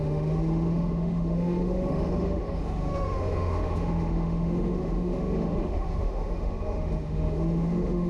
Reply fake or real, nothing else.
fake